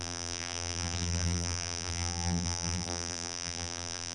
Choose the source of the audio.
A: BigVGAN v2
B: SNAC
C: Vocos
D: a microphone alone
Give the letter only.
A